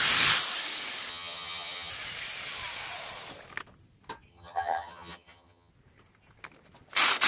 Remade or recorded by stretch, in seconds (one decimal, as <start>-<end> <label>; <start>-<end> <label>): 0.0-1.1 recorded; 1.1-1.9 remade; 1.9-4.3 recorded; 4.3-5.7 remade; 5.7-7.3 recorded